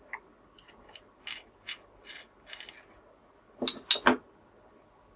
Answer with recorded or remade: recorded